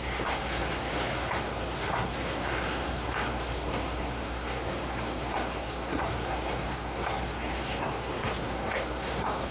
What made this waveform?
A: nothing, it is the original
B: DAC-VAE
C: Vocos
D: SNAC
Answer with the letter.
D